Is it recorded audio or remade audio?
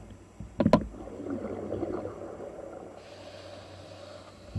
recorded